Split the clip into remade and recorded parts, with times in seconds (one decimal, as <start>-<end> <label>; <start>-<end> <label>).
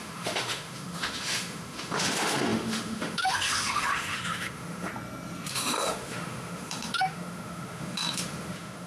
0.0-4.9 remade; 4.9-5.5 recorded; 5.5-8.9 remade